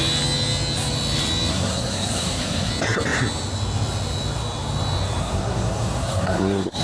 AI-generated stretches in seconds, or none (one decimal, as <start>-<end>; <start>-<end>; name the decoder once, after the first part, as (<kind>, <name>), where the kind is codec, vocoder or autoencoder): 1.5-2.7 (codec, SNAC); 5.2-6.8